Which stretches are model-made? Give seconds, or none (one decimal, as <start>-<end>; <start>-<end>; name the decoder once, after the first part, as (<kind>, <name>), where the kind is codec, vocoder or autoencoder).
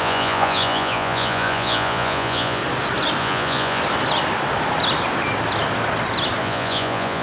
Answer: 0.0-2.6 (vocoder, Vocos); 3.2-3.8; 6.4-7.2